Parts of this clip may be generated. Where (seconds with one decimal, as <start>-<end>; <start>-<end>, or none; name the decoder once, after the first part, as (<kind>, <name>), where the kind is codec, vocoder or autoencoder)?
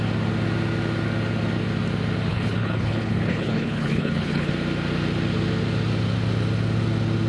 2.3-4.5 (codec, HILCodec)